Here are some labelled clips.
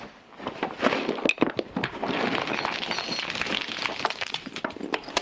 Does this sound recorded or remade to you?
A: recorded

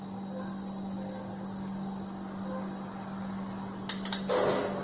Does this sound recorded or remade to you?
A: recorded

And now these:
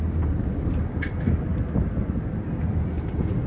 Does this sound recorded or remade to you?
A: recorded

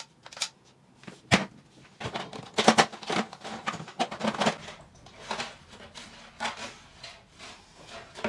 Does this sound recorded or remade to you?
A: recorded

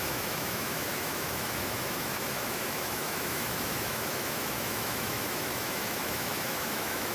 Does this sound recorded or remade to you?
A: remade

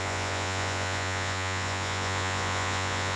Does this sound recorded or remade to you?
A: remade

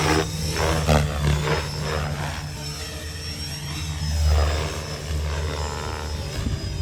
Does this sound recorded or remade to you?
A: recorded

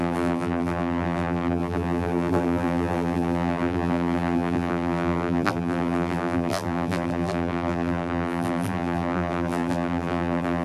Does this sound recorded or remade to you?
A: remade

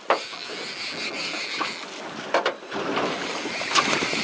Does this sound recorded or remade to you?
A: recorded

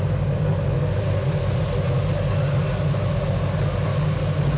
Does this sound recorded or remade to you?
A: recorded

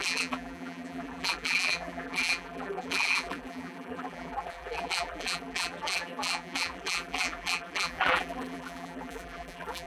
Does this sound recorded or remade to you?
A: remade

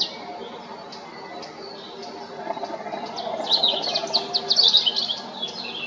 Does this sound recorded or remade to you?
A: recorded